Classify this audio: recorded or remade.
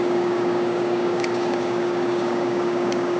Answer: remade